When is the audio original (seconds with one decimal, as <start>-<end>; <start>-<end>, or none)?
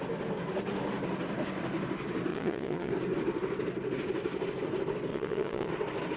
0.0-2.3; 2.9-5.1; 5.7-6.2